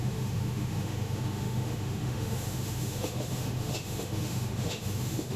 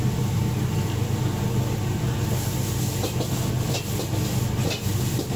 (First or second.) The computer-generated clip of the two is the first